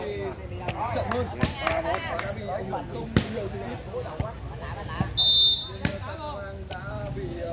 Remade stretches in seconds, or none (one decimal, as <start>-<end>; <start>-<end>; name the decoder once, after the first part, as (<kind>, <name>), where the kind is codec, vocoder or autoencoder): none